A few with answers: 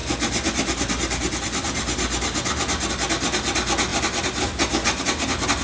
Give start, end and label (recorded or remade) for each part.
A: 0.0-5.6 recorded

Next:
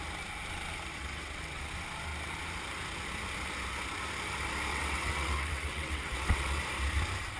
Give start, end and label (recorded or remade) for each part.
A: 0.0-0.9 recorded; 0.9-1.7 remade; 1.7-4.7 recorded; 4.7-6.6 remade; 6.6-7.4 recorded

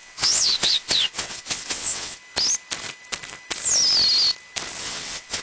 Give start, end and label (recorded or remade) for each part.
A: 0.0-2.2 remade; 2.2-4.8 recorded; 4.8-5.4 remade

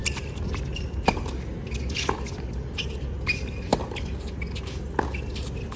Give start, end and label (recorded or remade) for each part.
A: 0.0-5.8 recorded

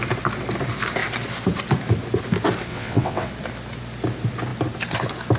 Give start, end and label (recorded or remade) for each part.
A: 0.0-2.7 recorded; 2.7-3.3 remade; 3.3-5.4 recorded